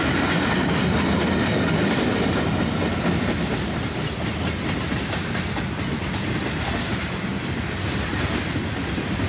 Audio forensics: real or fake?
real